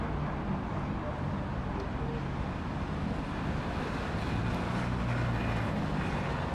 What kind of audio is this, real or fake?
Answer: real